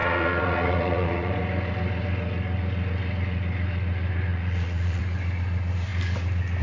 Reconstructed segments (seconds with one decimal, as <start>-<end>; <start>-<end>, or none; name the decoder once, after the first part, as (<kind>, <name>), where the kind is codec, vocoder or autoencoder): 0.0-1.3 (vocoder, Vocos); 4.3-5.0